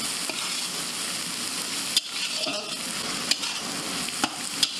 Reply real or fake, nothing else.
real